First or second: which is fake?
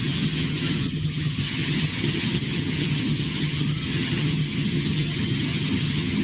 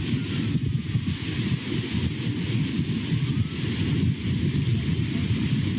first